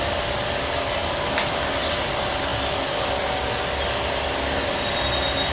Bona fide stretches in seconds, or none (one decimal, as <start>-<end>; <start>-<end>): 0.0-5.5